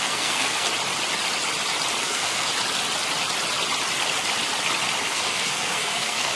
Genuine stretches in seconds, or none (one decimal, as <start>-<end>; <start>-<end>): 0.7-2.0; 2.5-5.0